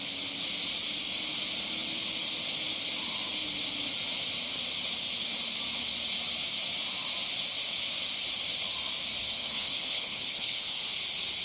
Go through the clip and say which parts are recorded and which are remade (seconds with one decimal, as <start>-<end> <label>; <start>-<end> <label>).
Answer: 0.0-9.2 recorded; 9.2-10.8 remade; 10.8-11.4 recorded